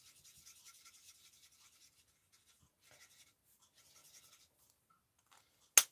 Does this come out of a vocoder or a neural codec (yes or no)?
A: no